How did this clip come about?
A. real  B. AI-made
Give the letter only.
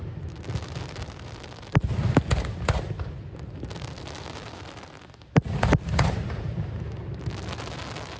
A